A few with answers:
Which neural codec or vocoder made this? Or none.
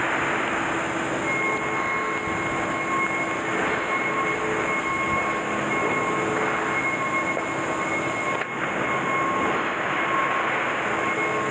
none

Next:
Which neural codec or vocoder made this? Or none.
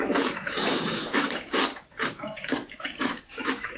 autoencoder, DAC-VAE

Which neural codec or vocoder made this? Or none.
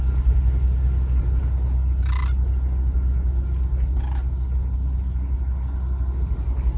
none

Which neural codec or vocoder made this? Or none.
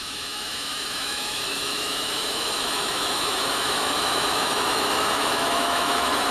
autoencoder, DAC-VAE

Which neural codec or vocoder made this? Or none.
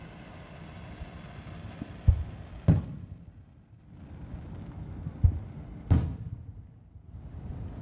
none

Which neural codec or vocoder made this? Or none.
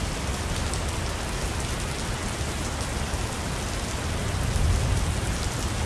none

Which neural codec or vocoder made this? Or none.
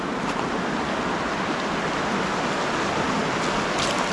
none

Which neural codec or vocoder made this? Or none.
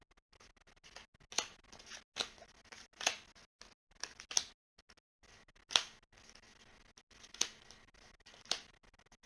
none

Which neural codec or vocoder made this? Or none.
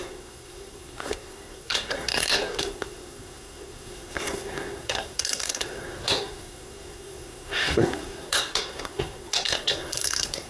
codec, SNAC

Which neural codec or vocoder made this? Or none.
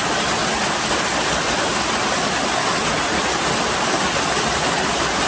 none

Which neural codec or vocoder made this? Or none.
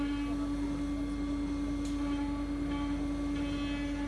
none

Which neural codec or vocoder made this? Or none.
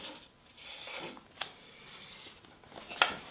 none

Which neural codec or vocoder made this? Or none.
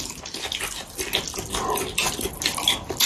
none